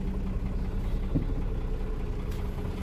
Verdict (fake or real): real